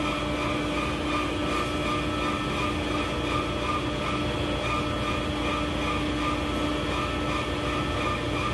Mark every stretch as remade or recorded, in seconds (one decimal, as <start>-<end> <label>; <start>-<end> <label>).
0.0-8.5 recorded